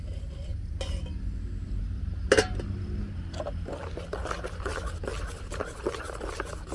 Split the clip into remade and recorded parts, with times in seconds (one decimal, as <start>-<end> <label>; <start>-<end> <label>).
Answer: 0.0-6.7 recorded